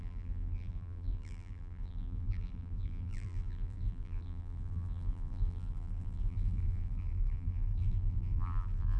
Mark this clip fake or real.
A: fake